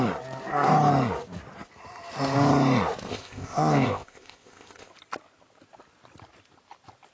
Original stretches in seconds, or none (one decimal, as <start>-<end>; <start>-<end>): 0.0-3.1; 4.9-7.1